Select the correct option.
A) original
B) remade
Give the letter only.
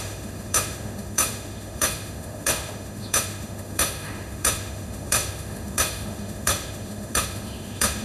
B